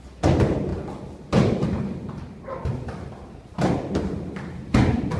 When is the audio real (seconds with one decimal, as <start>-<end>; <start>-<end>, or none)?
0.0-5.2